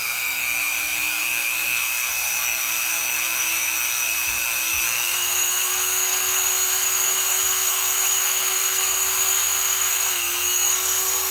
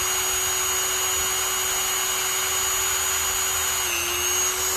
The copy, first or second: first